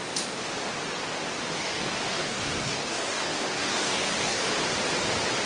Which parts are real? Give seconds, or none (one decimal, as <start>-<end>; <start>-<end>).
0.0-1.6; 4.5-5.5